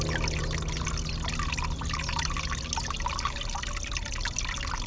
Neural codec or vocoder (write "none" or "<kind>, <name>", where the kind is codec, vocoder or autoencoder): none